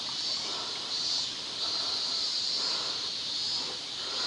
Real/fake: real